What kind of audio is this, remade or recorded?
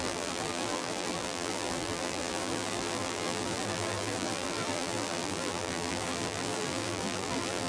remade